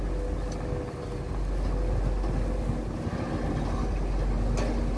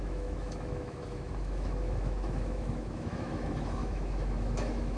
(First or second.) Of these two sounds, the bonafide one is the first